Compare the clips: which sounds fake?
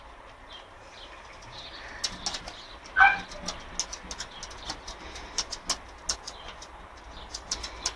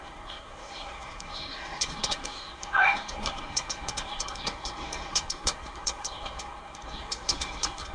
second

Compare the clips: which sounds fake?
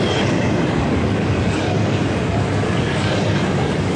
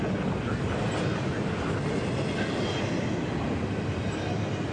first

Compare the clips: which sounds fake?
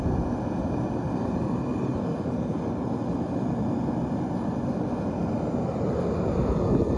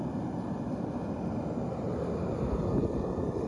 second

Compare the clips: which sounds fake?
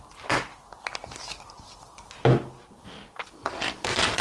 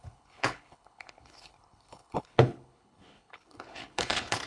second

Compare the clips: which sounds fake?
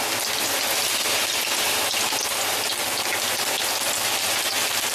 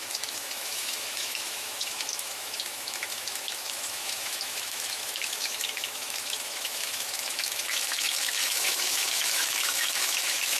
second